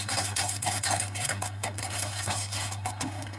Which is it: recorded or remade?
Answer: remade